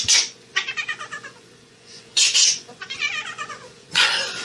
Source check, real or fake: fake